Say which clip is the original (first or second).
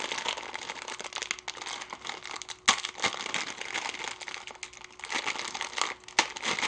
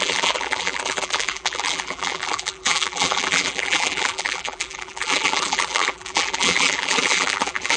first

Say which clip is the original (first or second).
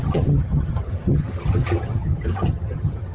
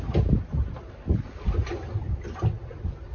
second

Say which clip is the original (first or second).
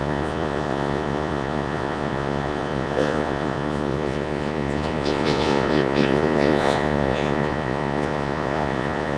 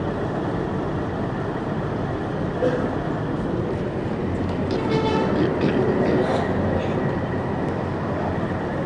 second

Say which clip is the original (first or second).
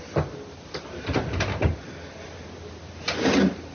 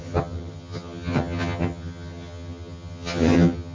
first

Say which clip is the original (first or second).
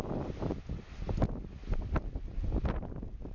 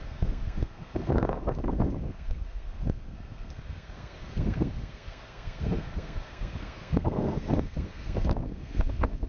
first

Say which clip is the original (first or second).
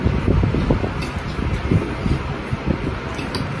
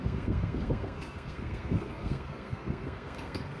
first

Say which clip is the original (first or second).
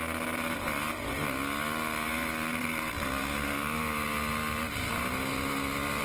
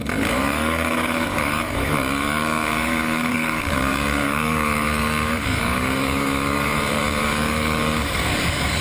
first